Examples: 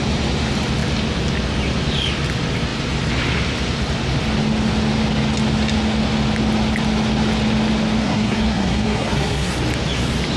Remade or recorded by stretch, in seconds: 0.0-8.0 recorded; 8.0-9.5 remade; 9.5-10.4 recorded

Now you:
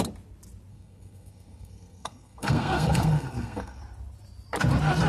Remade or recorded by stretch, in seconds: 0.0-0.7 recorded; 0.7-3.8 remade; 3.8-5.1 recorded

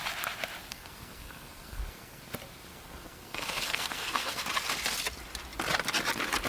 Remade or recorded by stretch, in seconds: 0.0-0.7 recorded; 0.7-2.2 remade; 2.2-2.7 recorded; 2.7-4.4 remade; 4.4-6.5 recorded

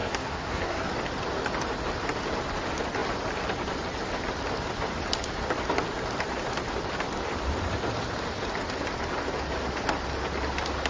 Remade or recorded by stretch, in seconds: 0.0-0.9 remade; 0.9-10.9 recorded

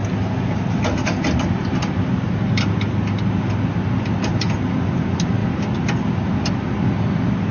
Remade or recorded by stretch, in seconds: 0.0-7.5 recorded

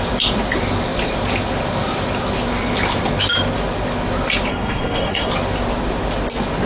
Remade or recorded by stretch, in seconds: 0.0-4.5 recorded; 4.5-5.3 remade; 5.3-6.7 recorded

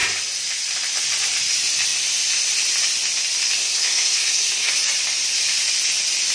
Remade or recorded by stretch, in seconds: 0.0-3.6 recorded; 3.6-4.7 remade; 4.7-6.3 recorded